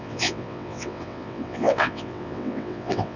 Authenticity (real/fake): fake